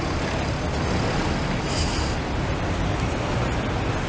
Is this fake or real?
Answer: real